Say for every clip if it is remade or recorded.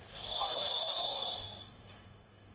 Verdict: remade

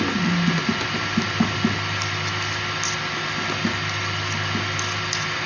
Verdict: recorded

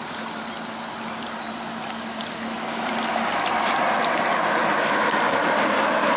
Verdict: recorded